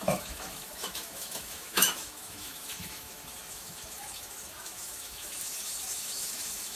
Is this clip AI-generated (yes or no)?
yes